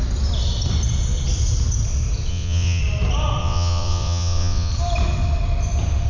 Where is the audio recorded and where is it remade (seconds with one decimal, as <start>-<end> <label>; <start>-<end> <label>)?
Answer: 0.0-2.3 recorded; 2.3-2.8 remade; 2.8-3.4 recorded; 3.4-4.7 remade; 4.7-6.1 recorded